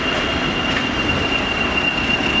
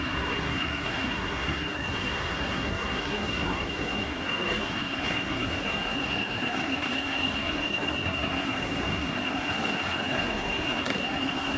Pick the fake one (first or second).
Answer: second